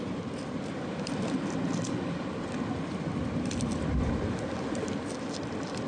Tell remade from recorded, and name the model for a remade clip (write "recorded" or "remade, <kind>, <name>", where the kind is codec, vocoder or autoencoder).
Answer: recorded